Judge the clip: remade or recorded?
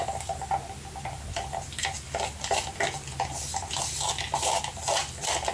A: recorded